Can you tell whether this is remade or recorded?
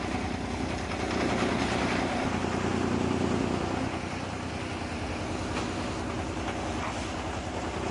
recorded